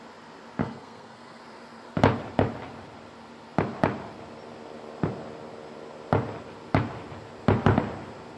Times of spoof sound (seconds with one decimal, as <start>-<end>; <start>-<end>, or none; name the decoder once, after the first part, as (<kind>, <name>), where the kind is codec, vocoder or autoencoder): 0.6-1.4 (codec, SNAC)